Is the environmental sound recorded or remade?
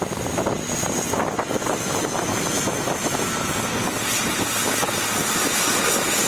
recorded